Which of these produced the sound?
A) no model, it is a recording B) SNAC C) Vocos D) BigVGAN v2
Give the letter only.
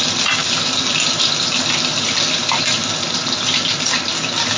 A